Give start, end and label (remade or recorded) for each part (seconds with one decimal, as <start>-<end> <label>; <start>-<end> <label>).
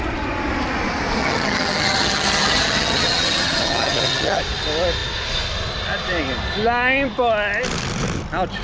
0.0-1.2 recorded; 1.2-4.4 remade; 4.4-8.6 recorded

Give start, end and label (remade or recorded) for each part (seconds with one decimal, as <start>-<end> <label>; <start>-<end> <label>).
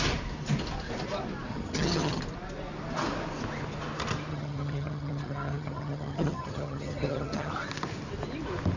0.0-1.5 recorded; 1.5-2.2 remade; 2.2-4.3 recorded; 4.3-7.5 remade; 7.5-8.8 recorded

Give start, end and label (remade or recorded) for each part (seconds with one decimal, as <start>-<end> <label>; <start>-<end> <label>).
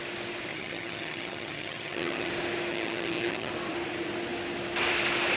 0.0-0.5 recorded; 0.5-2.3 remade; 2.3-2.7 recorded; 2.7-3.5 remade; 3.5-5.4 recorded